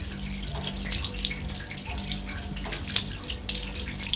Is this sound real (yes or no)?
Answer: yes